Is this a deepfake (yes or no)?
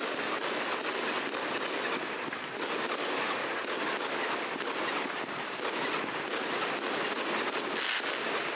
no